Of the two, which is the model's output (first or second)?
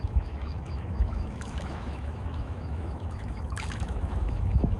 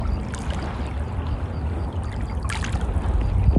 first